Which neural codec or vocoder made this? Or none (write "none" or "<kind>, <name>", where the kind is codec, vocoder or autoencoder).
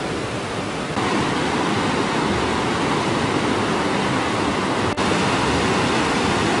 none